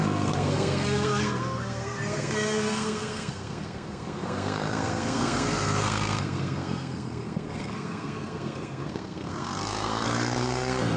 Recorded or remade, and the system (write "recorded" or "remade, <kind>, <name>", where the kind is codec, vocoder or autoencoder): remade, codec, SNAC